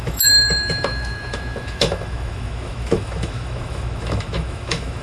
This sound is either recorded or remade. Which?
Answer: remade